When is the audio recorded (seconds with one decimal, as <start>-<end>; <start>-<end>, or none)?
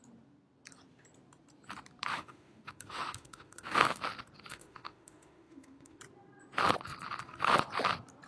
0.0-2.1; 4.0-4.5; 6.0-8.3